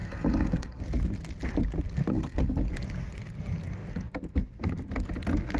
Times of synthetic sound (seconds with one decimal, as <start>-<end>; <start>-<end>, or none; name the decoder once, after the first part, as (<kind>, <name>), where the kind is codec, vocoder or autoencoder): 0.0-0.8 (codec, SNAC); 2.1-2.7